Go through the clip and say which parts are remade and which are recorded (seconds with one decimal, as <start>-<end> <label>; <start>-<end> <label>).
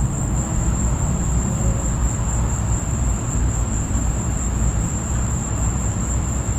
0.0-2.0 remade; 2.0-2.5 recorded; 2.5-6.6 remade